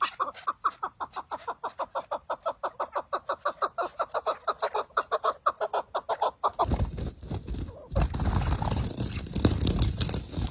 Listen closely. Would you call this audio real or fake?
real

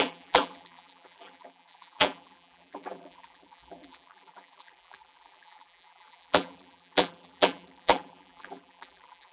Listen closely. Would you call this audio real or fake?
fake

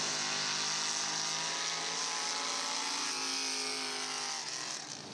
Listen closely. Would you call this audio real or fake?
real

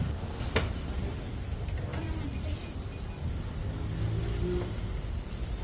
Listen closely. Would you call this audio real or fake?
real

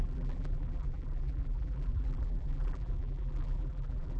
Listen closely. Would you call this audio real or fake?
fake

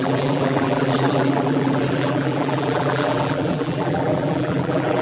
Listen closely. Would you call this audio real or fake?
fake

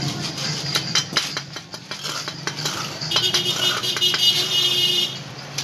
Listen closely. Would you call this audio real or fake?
fake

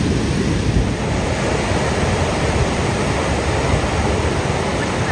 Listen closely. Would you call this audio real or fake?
fake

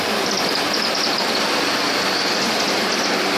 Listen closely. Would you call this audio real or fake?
real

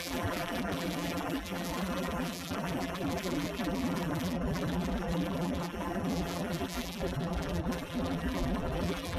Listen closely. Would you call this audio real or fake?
fake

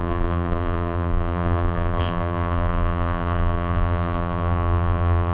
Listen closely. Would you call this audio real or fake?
fake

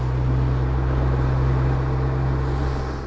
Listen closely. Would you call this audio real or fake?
real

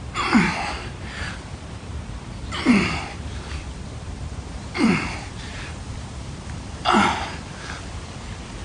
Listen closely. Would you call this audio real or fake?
fake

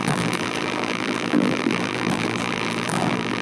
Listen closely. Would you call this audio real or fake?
fake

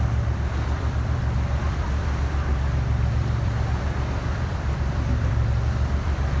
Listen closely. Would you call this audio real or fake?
fake